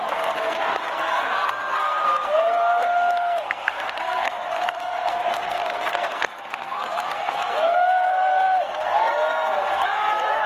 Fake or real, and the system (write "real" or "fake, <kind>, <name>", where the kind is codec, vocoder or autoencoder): fake, codec, SNAC